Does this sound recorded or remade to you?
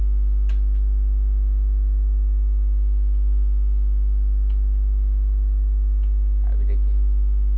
recorded